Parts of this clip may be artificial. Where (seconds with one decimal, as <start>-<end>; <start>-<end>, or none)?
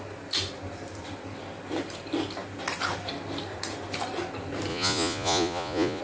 4.7-6.0